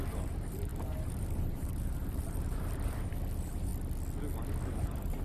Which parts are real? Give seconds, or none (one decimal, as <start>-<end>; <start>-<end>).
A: 3.7-4.7